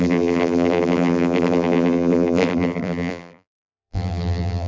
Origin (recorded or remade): remade